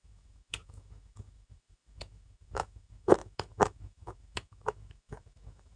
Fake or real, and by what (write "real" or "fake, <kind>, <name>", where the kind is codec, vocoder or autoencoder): fake, autoencoder, DAC-VAE